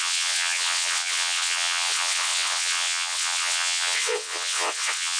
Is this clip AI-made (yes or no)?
yes